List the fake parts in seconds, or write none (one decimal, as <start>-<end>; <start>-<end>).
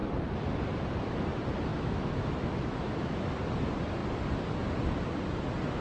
1.7-3.3